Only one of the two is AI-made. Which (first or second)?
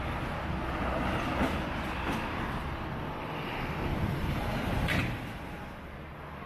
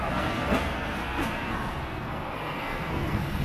second